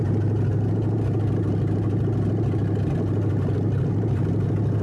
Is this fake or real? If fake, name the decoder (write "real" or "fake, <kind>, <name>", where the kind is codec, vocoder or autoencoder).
real